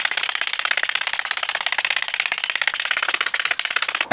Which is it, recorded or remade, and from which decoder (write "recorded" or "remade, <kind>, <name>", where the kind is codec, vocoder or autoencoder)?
recorded